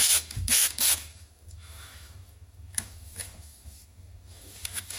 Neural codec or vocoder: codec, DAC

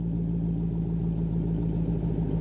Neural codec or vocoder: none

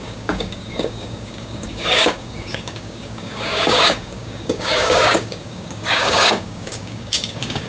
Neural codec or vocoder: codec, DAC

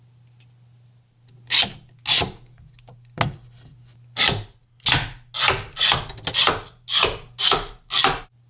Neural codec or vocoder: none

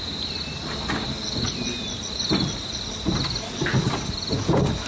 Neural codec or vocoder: none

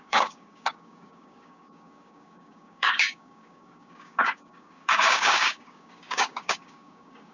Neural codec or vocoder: codec, DAC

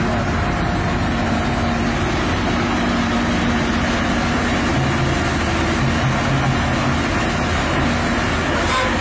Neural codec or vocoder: none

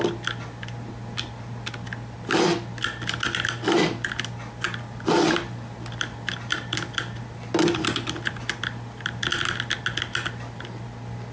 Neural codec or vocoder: none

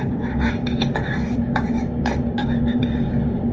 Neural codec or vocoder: codec, DAC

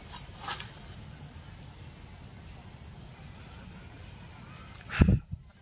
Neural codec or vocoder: none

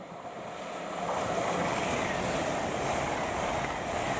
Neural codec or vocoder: none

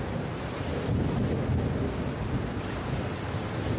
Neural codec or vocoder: none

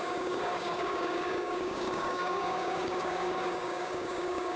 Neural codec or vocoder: codec, DAC